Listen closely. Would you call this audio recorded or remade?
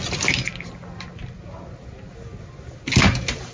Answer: recorded